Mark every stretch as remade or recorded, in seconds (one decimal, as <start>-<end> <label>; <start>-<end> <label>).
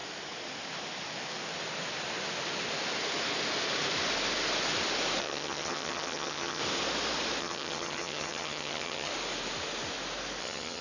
0.0-5.2 recorded; 5.2-6.6 remade; 6.6-7.4 recorded; 7.4-9.1 remade; 9.1-10.4 recorded; 10.4-10.8 remade